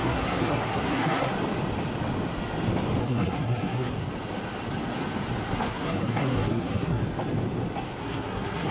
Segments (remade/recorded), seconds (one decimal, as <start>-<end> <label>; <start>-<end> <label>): 0.0-1.3 remade; 1.3-3.0 recorded; 3.0-4.0 remade; 4.0-5.5 recorded; 5.5-7.0 remade; 7.0-8.0 recorded; 8.0-8.7 remade